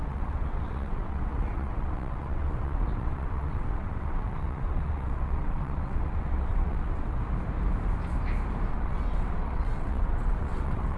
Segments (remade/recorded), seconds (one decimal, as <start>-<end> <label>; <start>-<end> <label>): 0.0-7.2 remade; 7.2-8.7 recorded; 8.7-11.0 remade